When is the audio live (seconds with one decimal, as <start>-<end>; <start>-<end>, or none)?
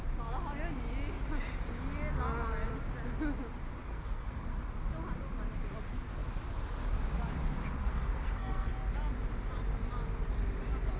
0.0-3.8; 4.6-7.8; 8.7-11.0